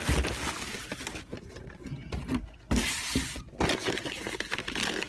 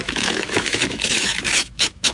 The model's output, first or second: second